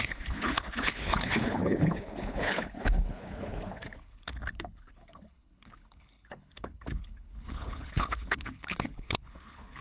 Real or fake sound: fake